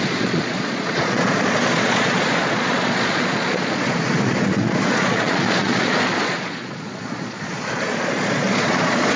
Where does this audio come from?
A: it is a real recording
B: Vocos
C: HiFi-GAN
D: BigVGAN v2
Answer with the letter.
B